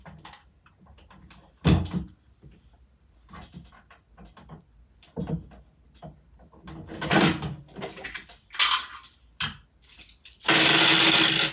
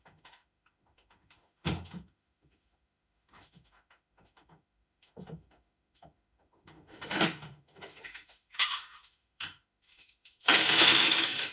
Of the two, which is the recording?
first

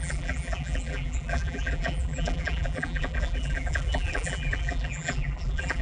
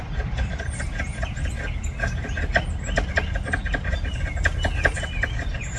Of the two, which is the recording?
second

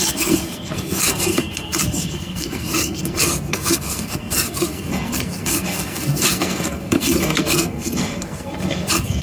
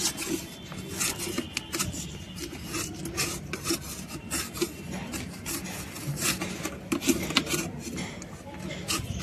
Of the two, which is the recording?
second